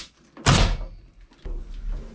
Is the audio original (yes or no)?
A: yes